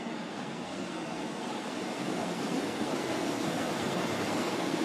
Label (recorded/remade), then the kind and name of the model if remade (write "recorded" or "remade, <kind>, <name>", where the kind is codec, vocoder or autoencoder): remade, codec, SNAC